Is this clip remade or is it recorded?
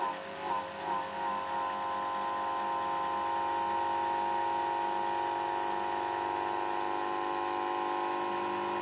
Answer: recorded